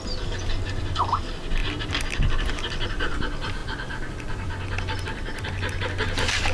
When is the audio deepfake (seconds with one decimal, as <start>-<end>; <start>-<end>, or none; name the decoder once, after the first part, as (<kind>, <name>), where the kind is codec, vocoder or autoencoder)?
none